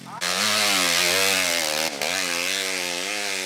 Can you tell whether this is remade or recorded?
recorded